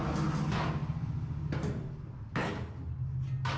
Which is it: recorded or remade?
recorded